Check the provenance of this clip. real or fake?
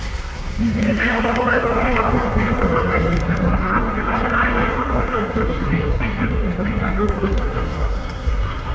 fake